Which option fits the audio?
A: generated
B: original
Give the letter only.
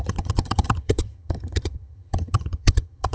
A